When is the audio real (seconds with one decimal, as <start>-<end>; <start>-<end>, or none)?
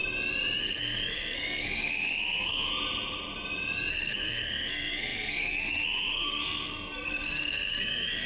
0.0-0.6; 2.7-3.9